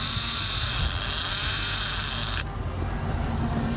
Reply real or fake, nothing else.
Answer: real